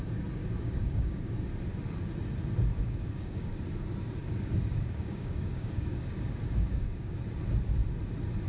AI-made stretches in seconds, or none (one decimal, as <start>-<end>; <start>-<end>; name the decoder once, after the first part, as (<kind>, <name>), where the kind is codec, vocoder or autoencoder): 0.4-1.3 (codec, DAC); 2.7-3.5; 4.2-7.2